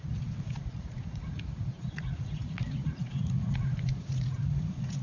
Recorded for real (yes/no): no